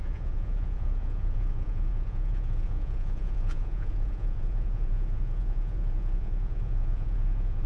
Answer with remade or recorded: remade